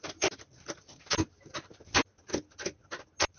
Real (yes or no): yes